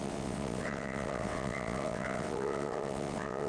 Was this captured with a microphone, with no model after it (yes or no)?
no